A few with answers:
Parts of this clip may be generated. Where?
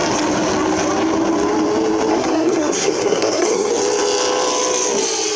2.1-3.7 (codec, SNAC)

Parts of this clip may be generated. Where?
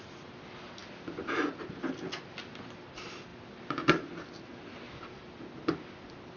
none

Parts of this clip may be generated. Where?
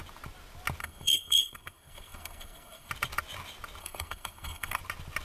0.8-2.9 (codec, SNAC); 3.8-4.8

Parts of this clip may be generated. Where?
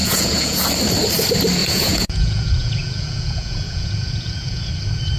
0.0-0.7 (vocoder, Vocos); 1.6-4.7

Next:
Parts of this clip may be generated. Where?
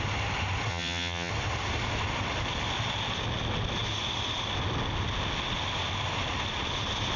0.7-1.3 (vocoder, HiFi-GAN)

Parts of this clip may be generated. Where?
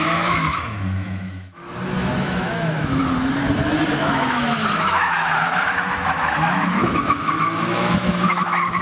0.0-1.6 (autoencoder, DAC-VAE); 2.2-3.0; 4.0-8.8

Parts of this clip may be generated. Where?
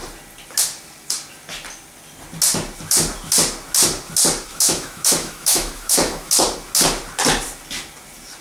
4.5-6.3 (autoencoder, DAC-VAE)